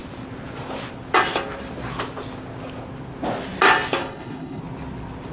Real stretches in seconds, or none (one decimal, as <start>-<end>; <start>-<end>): 0.0-4.0; 4.6-5.3